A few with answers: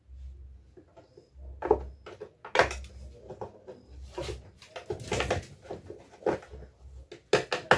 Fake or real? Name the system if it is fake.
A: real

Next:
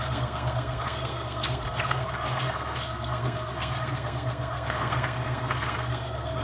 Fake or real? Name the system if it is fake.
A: fake, codec, SNAC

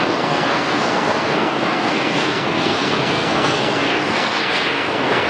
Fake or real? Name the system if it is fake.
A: fake, codec, SNAC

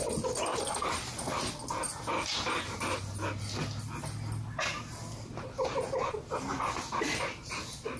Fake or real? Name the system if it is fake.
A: real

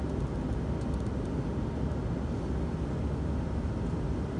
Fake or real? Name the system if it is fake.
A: real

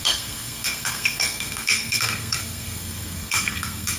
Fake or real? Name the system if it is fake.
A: fake, codec, SNAC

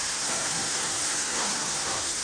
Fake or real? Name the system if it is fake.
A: fake, codec, SNAC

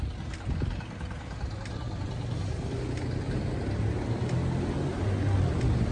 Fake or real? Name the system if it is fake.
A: real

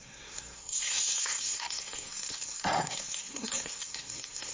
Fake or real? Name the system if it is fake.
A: fake, codec, SNAC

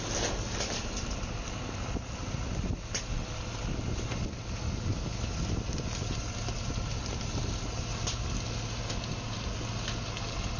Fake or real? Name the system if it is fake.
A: real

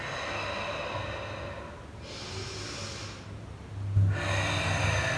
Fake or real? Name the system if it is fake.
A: real